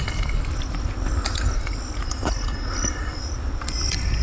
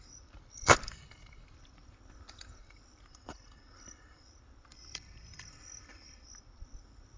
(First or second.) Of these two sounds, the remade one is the second